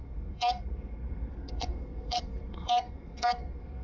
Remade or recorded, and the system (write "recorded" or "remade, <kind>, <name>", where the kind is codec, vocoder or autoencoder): remade, codec, SNAC